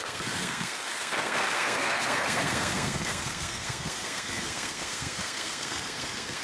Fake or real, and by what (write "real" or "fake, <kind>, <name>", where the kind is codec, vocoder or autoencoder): fake, codec, SNAC